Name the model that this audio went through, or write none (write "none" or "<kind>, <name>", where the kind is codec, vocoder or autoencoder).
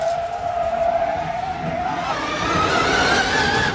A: none